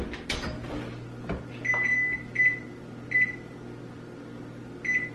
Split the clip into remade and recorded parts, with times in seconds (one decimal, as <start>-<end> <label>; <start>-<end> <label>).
0.0-5.1 recorded